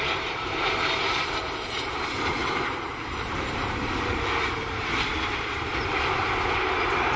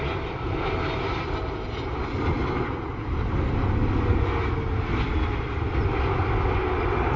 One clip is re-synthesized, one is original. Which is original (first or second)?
second